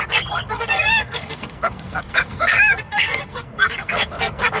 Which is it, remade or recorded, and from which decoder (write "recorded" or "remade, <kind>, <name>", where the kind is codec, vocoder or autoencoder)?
remade, codec, SNAC